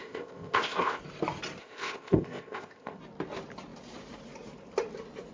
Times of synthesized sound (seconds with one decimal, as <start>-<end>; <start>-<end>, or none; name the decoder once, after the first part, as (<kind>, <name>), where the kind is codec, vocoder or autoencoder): 0.0-1.0 (codec, ZipCodec); 1.6-3.0